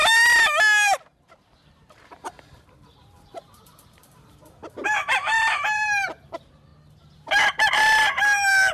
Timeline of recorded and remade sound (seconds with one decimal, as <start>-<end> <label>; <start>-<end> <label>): 0.0-1.4 recorded; 1.4-4.6 remade; 4.6-6.3 recorded; 6.3-6.7 remade; 6.7-7.7 recorded; 7.7-8.7 remade